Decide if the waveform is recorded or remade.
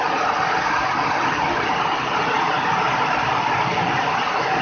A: recorded